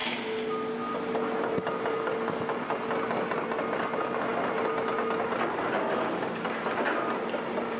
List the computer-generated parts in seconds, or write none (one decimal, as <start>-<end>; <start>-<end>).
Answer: none